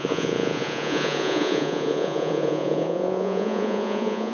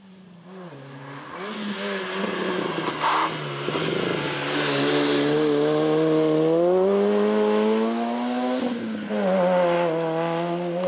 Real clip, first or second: second